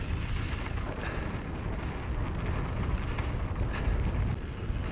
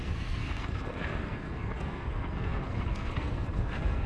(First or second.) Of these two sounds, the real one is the first